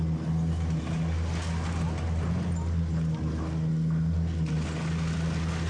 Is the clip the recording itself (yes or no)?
yes